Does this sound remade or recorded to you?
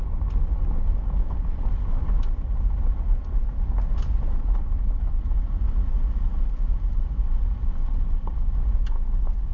recorded